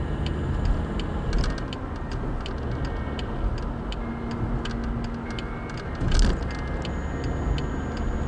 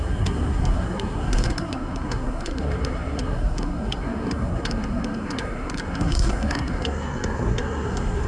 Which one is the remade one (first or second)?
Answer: second